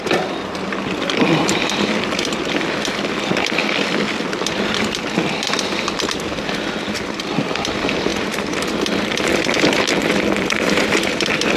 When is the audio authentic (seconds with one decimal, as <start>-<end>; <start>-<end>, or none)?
3.6-4.3